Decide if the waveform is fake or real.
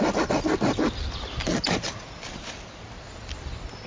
real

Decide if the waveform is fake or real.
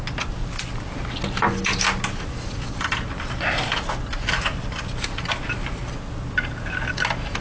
real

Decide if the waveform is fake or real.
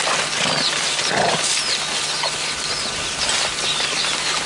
real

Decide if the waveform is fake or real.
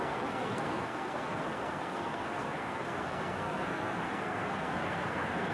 fake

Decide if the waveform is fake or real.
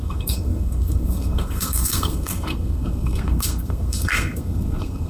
fake